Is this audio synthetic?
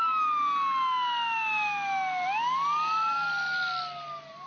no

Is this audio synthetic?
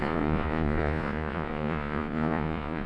yes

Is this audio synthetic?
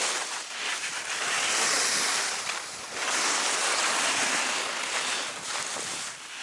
no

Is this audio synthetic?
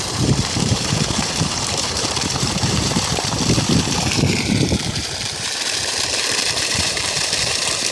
yes